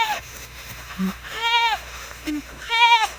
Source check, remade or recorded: remade